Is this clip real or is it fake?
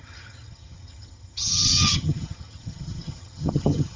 fake